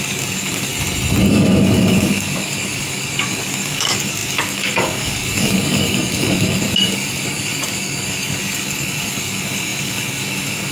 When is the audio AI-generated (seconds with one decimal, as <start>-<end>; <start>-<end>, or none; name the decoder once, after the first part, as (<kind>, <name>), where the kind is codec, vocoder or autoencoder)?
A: 0.0-0.7 (codec, DAC); 1.3-10.7